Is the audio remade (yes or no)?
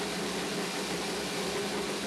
no